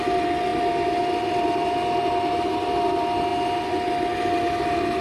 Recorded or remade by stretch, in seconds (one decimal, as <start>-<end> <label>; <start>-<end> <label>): 0.0-5.0 recorded